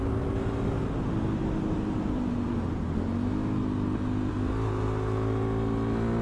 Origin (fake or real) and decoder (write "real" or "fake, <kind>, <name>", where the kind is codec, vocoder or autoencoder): real